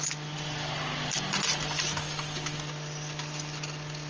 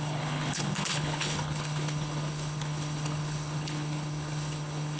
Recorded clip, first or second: first